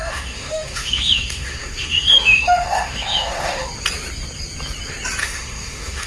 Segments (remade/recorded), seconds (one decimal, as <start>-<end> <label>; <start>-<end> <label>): 0.0-3.7 remade; 3.7-5.2 recorded; 5.2-6.1 remade